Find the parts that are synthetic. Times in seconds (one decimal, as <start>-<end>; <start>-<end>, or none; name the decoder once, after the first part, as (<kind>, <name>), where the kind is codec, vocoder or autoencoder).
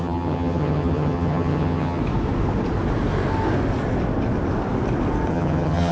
0.0-2.0 (vocoder, HiFi-GAN); 5.3-5.9